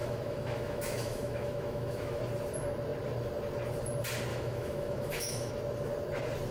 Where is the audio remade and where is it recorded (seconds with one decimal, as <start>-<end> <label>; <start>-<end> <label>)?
0.0-2.2 remade; 2.2-4.3 recorded; 4.3-5.5 remade; 5.5-6.5 recorded